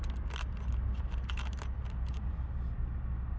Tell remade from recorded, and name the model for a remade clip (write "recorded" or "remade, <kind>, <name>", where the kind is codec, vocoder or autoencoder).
recorded